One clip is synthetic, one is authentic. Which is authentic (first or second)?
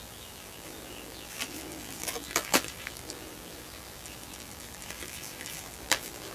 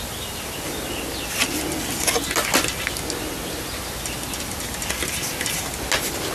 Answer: second